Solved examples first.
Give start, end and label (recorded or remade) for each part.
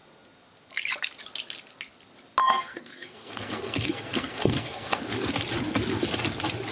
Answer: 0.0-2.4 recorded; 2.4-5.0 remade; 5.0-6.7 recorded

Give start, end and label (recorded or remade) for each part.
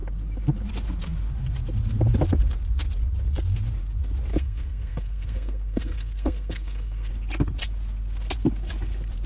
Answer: 0.0-4.3 recorded; 4.3-7.1 remade; 7.1-9.3 recorded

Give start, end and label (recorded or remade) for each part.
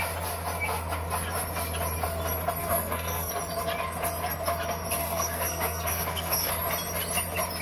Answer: 0.0-2.6 recorded; 2.6-3.3 remade; 3.3-5.0 recorded; 5.0-6.5 remade; 6.5-7.6 recorded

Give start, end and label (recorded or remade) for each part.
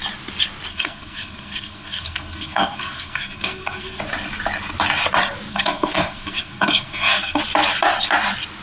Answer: 0.0-0.7 recorded; 0.7-4.0 remade; 4.0-5.5 recorded; 5.5-7.4 remade; 7.4-8.6 recorded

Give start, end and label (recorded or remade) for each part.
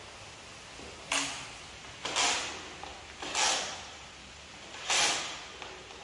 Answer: 0.0-6.0 recorded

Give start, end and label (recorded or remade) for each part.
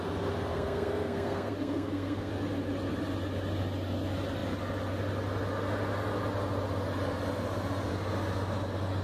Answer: 0.0-0.5 recorded; 0.5-2.3 remade; 2.3-9.0 recorded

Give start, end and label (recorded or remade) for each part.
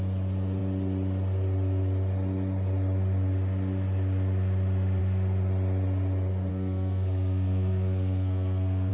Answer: 0.0-6.5 recorded; 6.5-8.9 remade